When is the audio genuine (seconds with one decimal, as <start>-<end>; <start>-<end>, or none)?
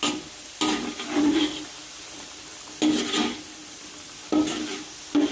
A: 0.0-5.3